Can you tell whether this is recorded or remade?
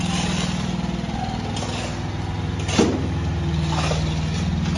recorded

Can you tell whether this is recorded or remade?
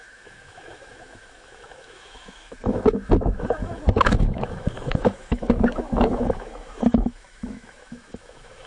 remade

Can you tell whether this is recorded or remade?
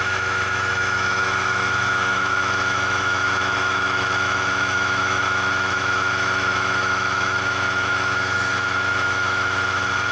remade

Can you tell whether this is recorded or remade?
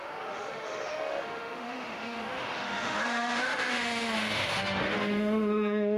remade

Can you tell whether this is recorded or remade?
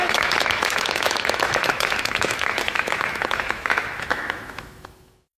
remade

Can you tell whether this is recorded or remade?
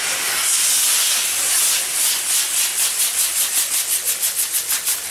recorded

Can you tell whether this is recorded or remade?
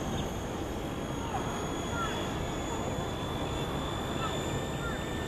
recorded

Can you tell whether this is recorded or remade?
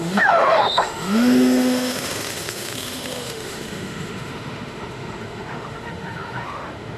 remade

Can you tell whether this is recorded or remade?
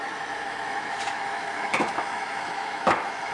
remade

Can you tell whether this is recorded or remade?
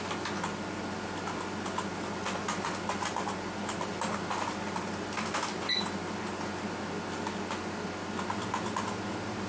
recorded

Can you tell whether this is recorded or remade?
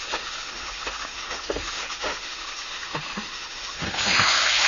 remade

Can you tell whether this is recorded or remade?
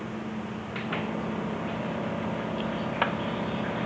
recorded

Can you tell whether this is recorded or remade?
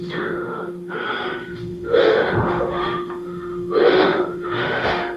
remade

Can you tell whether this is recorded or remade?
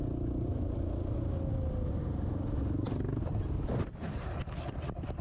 recorded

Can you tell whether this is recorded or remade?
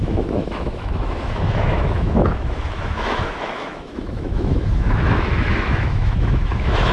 remade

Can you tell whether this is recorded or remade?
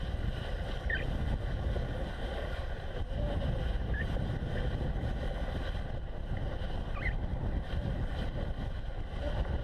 recorded